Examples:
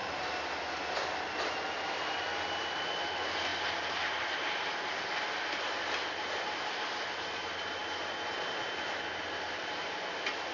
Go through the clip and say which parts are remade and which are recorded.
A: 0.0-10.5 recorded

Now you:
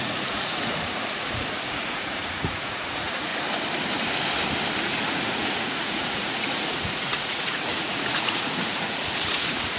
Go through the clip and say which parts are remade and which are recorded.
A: 0.0-3.3 remade; 3.3-4.8 recorded; 4.8-9.8 remade

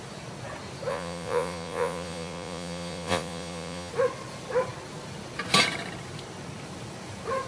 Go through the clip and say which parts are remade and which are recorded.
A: 0.0-0.9 recorded; 0.9-3.9 remade; 3.9-7.5 recorded

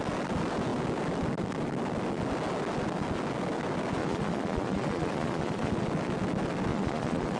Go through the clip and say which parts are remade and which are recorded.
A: 0.0-4.0 recorded; 4.0-5.7 remade; 5.7-6.7 recorded; 6.7-7.4 remade

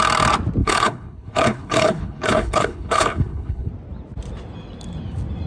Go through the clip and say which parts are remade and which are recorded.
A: 0.0-0.6 recorded; 0.6-3.7 remade; 3.7-5.5 recorded